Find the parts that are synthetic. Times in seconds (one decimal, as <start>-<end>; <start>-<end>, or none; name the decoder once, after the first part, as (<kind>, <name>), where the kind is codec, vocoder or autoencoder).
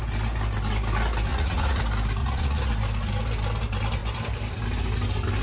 1.3-1.8 (vocoder, Vocos); 2.2-2.7